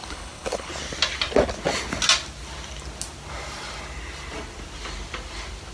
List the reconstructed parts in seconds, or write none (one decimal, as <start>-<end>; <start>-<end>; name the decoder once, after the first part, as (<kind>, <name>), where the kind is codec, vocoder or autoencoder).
0.0-0.7 (codec, HILCodec)